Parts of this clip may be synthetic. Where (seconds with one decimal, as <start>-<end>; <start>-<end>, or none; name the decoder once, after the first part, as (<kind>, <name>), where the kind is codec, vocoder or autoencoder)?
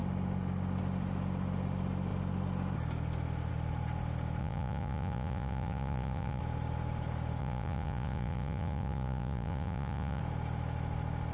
4.4-6.4 (vocoder, Vocos); 7.4-10.2